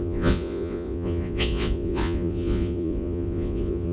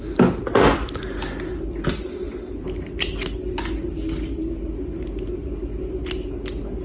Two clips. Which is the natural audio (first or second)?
second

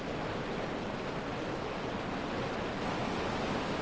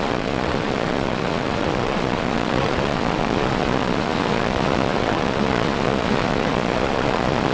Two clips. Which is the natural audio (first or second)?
first